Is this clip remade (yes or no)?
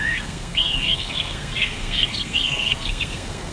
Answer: yes